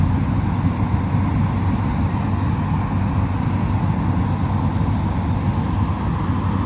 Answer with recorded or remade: recorded